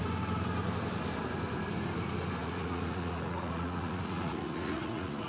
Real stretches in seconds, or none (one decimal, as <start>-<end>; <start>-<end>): 0.0-2.4